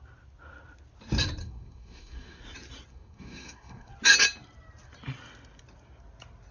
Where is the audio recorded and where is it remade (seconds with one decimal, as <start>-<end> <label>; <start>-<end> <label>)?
0.0-1.4 recorded; 1.4-2.4 remade; 2.4-2.9 recorded; 2.9-3.9 remade; 3.9-6.5 recorded